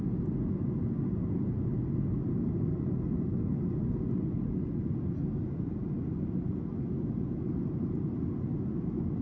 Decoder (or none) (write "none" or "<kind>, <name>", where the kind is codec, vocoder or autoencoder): none